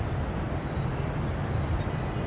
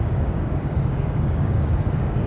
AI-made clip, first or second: second